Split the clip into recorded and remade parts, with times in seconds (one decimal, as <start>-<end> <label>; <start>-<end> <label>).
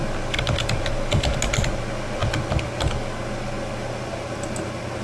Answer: 0.0-5.0 recorded